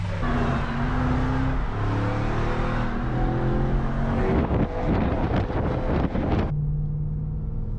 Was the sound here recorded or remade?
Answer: recorded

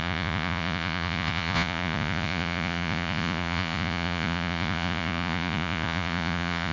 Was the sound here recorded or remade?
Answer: remade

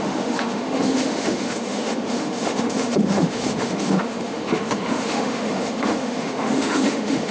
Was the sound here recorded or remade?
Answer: remade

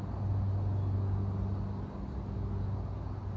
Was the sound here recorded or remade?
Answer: recorded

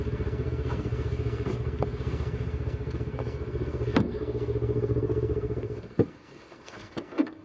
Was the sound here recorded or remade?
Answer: remade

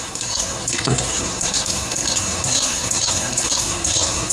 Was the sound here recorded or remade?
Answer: remade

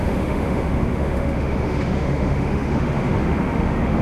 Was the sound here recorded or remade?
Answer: remade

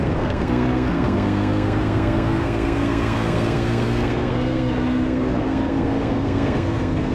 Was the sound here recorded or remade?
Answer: remade